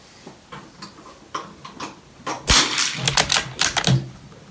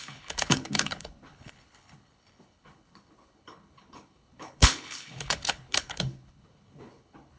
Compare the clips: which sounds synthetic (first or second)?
second